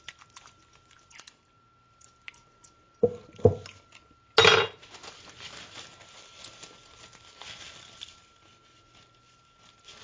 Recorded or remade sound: recorded